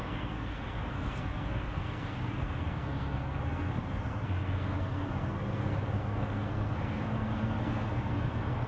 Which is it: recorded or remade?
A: remade